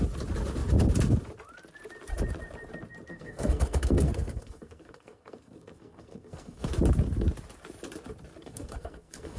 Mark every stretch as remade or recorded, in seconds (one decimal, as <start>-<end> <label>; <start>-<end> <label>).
0.0-3.1 recorded; 3.1-6.7 remade; 6.7-8.4 recorded; 8.4-9.4 remade